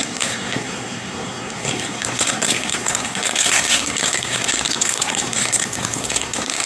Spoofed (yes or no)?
yes